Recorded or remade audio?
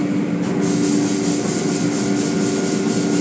recorded